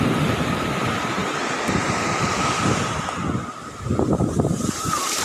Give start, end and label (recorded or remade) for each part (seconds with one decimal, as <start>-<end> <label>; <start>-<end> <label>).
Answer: 0.0-1.2 remade; 1.2-4.1 recorded; 4.1-5.2 remade